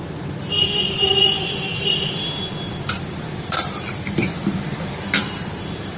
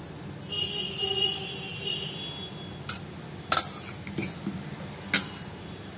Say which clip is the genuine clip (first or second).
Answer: second